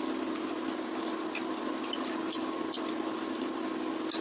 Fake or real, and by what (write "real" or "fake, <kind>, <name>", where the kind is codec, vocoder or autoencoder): real